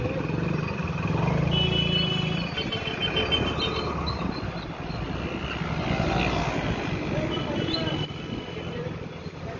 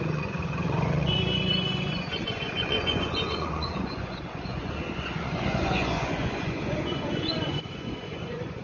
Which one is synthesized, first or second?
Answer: second